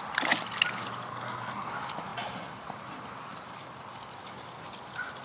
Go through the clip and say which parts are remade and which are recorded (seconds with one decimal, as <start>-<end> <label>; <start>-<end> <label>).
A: 0.0-1.1 recorded; 1.1-1.7 remade; 1.7-5.2 recorded